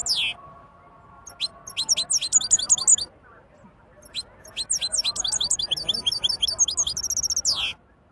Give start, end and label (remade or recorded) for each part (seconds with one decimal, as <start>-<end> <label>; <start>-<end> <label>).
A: 0.0-8.1 recorded